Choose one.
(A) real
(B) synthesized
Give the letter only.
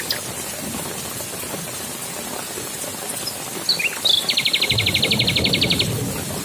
A